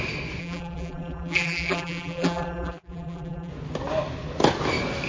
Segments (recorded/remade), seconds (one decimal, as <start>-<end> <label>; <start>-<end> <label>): 0.0-0.4 recorded; 0.4-3.5 remade; 3.5-5.1 recorded